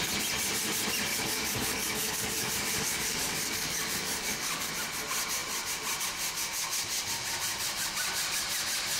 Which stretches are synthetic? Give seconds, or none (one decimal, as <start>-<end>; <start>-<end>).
1.1-4.7